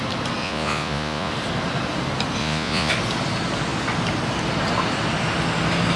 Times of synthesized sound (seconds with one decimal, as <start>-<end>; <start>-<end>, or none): 0.4-1.3; 2.4-2.9